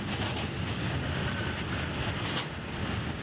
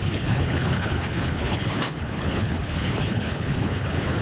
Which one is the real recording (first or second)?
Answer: first